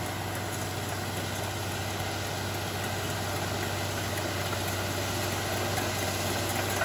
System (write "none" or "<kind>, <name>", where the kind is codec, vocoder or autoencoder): none